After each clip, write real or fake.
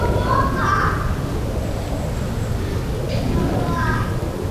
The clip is real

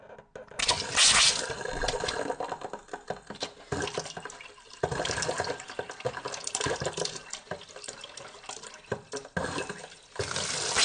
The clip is real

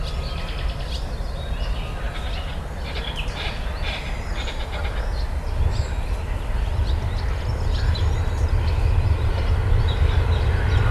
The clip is real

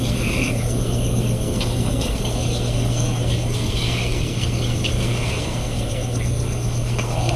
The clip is fake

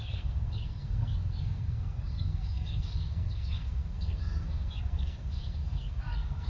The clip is fake